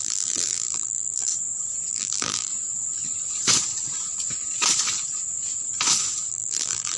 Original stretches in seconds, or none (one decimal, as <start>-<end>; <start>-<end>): 1.3-1.9; 2.5-6.3